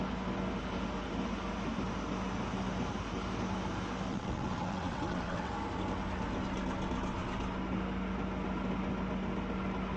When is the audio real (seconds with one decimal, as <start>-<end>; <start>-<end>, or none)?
0.0-4.1; 5.5-10.0